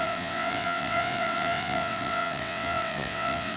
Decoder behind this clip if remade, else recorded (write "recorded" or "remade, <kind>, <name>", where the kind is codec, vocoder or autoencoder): remade, vocoder, WaveNeXt